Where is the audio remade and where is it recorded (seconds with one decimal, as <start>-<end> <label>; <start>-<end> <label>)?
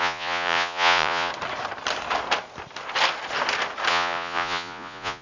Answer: 0.0-1.3 remade; 1.3-3.9 recorded; 3.9-5.2 remade